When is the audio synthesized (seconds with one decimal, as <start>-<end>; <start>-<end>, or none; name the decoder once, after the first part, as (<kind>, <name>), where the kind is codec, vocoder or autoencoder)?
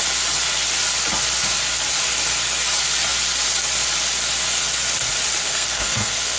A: 5.4-6.4 (codec, SNAC)